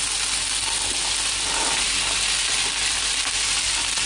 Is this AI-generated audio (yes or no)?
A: no